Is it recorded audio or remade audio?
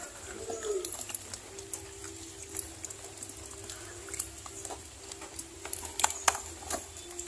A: recorded